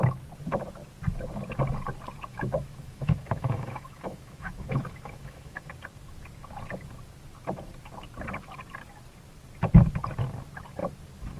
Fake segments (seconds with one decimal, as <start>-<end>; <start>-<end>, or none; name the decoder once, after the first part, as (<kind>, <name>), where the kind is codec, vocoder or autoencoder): 2.3-5.7 (autoencoder, DAC-VAE)